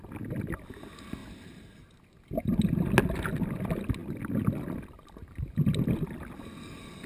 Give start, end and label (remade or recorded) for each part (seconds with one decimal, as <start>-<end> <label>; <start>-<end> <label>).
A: 0.0-4.0 recorded; 4.0-5.8 remade; 5.8-7.1 recorded